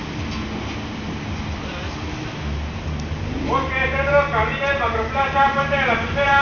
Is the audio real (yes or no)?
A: yes